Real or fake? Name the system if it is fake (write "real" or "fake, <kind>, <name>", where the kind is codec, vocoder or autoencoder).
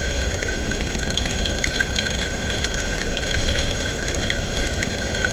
fake, autoencoder, DAC-VAE